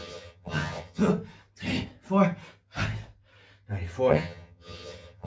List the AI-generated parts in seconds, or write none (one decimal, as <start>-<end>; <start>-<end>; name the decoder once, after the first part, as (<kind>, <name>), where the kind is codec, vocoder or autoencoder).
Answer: 0.0-1.1 (vocoder, HiFi-GAN); 4.1-5.3